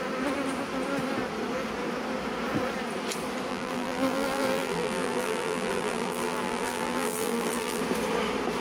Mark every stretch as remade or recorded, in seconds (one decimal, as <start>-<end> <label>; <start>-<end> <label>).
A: 0.0-3.5 recorded; 3.5-7.8 remade; 7.8-8.6 recorded